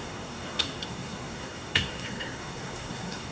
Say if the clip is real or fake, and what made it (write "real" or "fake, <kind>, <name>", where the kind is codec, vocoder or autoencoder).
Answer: fake, codec, SNAC